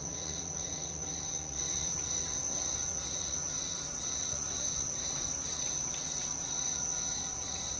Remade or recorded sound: remade